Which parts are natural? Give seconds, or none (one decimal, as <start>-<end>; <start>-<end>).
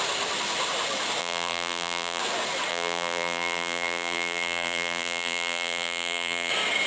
0.0-1.2; 2.2-2.7; 6.5-6.9